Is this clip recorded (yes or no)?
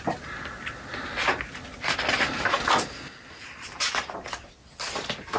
yes